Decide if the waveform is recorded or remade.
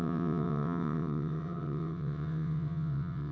remade